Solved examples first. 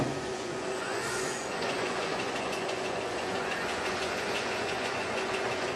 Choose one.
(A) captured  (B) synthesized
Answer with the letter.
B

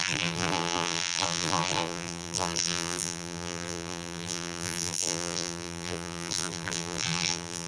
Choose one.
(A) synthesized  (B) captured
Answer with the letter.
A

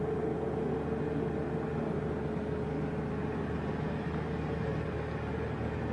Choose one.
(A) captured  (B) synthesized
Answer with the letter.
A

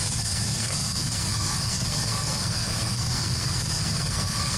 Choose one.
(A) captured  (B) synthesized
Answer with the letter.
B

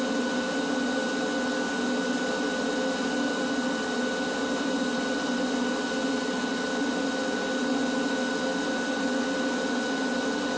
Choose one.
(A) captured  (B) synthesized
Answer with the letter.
A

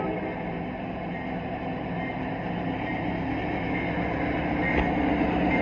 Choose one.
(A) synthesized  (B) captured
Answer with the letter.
B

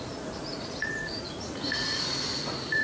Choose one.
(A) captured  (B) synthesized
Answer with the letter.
B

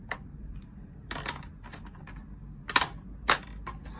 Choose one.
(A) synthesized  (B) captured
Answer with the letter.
B